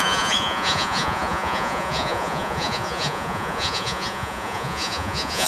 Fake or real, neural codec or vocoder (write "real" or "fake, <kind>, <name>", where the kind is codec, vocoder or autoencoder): fake, vocoder, Vocos